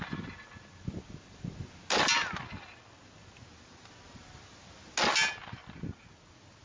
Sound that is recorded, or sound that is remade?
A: recorded